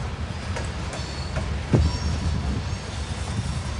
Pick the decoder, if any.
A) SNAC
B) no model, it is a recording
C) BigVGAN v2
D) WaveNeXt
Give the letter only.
B